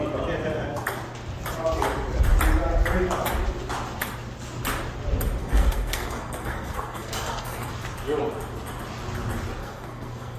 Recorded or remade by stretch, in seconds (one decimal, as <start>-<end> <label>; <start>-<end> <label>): 0.0-5.4 recorded; 5.4-7.7 remade; 7.7-9.6 recorded; 9.6-10.4 remade